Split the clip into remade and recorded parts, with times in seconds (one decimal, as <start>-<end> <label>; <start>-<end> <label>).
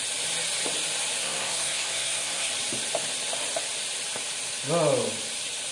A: 0.0-1.2 recorded; 1.2-2.5 remade; 2.5-5.7 recorded